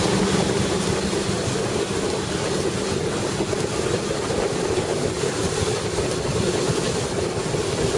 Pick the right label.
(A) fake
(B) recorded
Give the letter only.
B